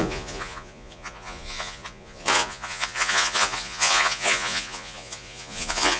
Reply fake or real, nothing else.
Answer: fake